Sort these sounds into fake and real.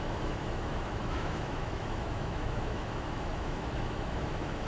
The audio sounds fake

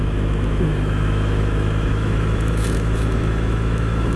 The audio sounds fake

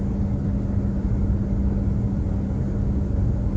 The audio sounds real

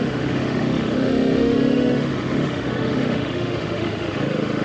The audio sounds fake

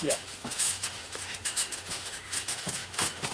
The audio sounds fake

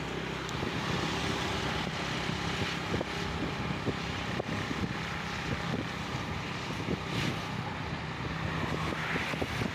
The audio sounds real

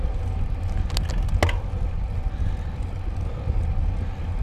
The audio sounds real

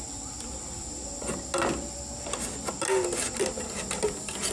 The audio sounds real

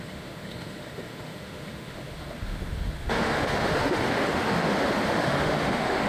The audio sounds fake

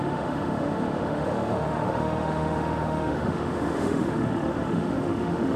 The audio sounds fake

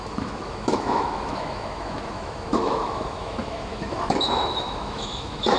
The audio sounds fake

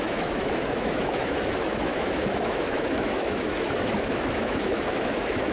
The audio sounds fake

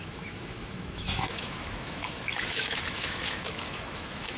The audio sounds fake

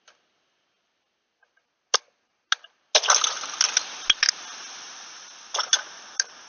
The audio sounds real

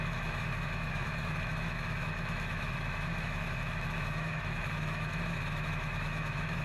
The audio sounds fake